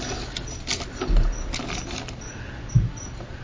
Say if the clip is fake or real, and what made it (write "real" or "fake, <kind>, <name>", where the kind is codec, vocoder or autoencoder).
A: real